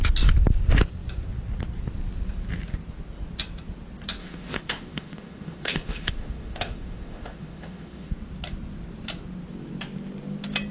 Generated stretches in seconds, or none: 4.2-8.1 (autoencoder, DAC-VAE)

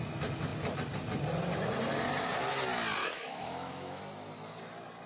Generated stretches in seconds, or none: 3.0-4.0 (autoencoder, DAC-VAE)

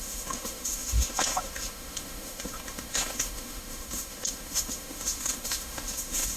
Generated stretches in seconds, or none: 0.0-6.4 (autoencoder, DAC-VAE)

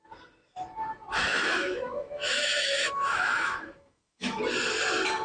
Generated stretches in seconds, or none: 1.3-4.4 (autoencoder, DAC-VAE)

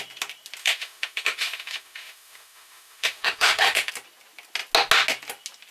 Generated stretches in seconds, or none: 0.6-3.9 (autoencoder, DAC-VAE)

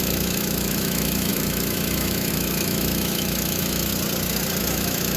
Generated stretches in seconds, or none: 0.0-3.9 (autoencoder, DAC-VAE); 4.6-5.2

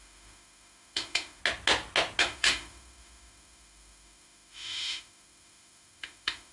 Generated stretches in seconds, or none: 0.0-1.4 (autoencoder, DAC-VAE); 2.2-6.5

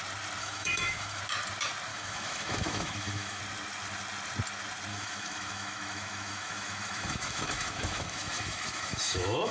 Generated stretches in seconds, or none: 0.4-1.2 (autoencoder, DAC-VAE); 1.9-3.4; 4.9-9.5